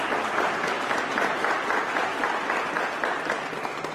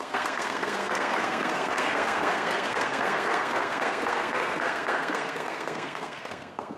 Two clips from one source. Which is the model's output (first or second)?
second